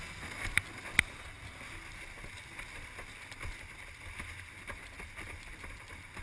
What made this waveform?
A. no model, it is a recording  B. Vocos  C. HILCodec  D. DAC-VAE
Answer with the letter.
A